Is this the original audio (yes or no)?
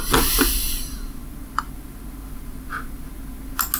yes